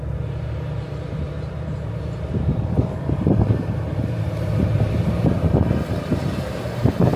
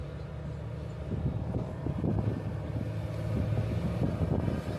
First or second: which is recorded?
second